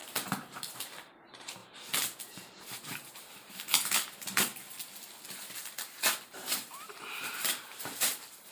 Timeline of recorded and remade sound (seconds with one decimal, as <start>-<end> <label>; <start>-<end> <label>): 0.0-4.5 remade; 4.5-5.3 recorded; 5.3-8.5 remade